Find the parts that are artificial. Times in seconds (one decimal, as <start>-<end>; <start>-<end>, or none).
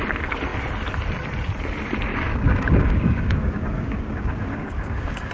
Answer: 2.1-5.3